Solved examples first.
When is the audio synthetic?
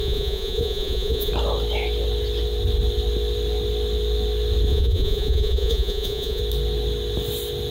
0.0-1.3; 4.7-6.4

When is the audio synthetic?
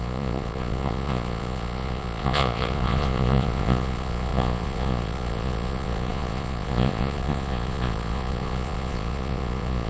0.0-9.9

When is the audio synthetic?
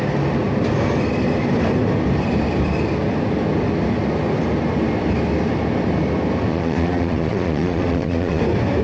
6.5-8.4